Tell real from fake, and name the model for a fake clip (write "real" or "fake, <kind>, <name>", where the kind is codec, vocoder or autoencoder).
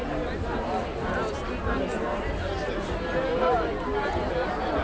real